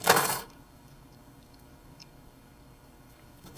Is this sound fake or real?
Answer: fake